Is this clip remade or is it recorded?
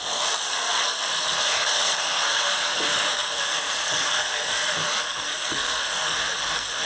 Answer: remade